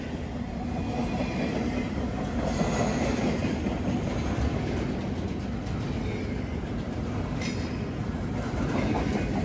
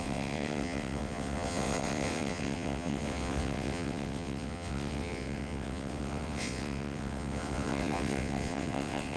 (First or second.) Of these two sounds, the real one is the first